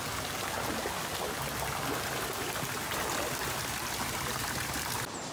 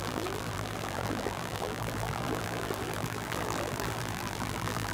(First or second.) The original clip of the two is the first